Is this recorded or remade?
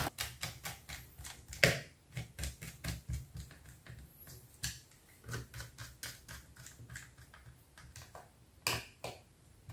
recorded